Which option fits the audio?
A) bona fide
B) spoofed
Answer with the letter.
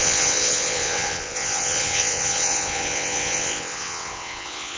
B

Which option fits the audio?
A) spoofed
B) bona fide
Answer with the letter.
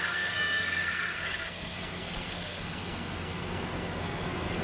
A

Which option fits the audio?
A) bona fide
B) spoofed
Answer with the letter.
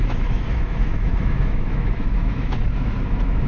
B